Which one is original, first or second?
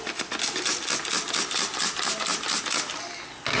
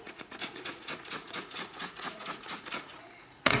first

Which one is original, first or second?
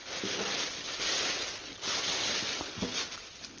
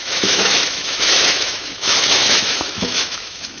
first